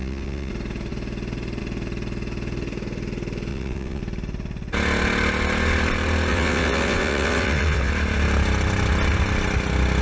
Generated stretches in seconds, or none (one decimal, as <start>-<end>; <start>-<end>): 0.0-0.5; 3.5-4.0; 6.3-7.9